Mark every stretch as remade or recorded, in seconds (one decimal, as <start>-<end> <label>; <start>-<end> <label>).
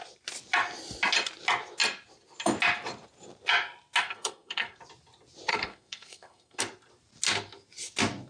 0.0-4.0 recorded; 4.0-4.8 remade; 4.8-5.5 recorded; 5.5-6.6 remade; 6.6-8.3 recorded